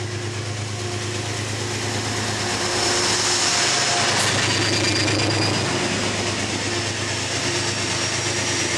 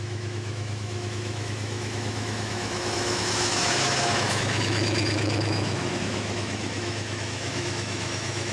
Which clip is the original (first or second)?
first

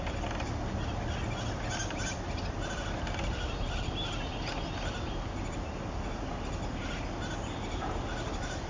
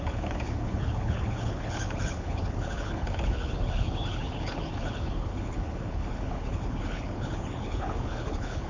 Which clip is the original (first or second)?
first